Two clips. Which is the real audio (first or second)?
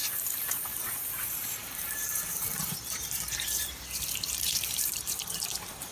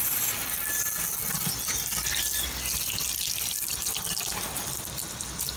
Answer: second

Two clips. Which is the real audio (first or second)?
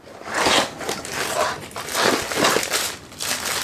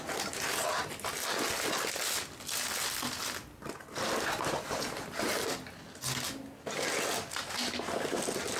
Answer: second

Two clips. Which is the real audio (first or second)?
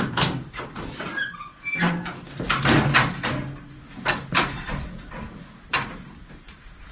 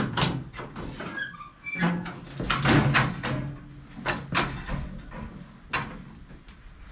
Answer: second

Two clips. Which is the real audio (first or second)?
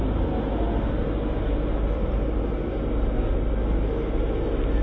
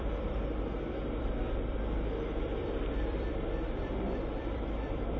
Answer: first